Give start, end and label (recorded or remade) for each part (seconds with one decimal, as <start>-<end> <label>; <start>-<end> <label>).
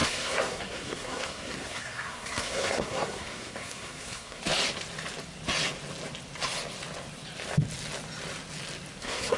0.0-4.4 remade; 4.4-9.0 recorded; 9.0-9.4 remade